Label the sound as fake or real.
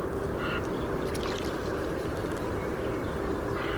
fake